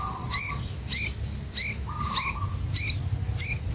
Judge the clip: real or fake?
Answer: real